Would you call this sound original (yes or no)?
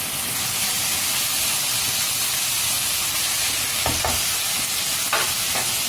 yes